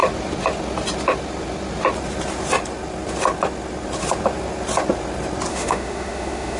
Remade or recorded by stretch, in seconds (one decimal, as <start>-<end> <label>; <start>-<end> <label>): 0.0-5.5 recorded; 5.5-6.6 remade